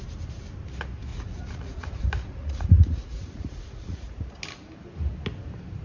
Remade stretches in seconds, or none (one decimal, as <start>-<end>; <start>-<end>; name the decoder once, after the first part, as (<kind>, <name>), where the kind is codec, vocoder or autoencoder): 1.1-4.3 (vocoder, Vocos)